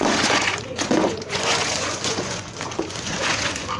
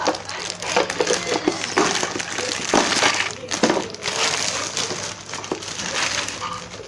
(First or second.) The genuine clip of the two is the second